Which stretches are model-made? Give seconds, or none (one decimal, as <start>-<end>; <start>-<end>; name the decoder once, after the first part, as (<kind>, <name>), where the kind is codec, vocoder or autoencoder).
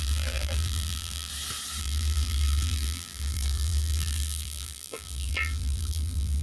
0.0-1.3 (vocoder, BigVGAN v2); 1.8-6.4